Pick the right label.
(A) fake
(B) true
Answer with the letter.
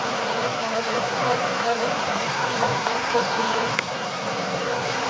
A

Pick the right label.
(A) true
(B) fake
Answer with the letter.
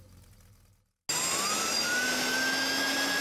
A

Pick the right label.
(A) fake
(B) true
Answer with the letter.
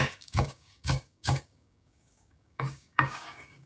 A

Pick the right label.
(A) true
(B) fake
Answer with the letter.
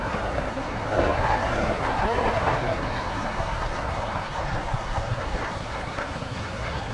B